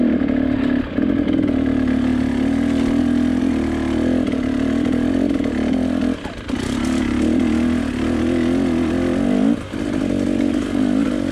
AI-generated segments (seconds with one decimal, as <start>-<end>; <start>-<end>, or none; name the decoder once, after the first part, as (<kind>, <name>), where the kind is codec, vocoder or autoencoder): none